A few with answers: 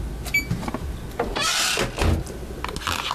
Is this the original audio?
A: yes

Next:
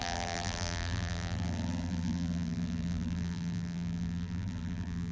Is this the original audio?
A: no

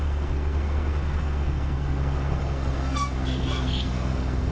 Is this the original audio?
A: no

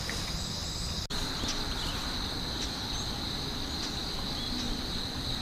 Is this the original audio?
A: yes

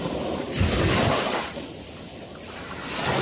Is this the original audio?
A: yes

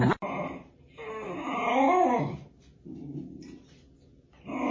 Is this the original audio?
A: yes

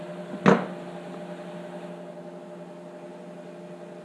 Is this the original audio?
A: yes